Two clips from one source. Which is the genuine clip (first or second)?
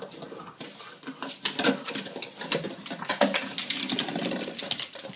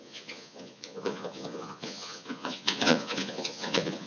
first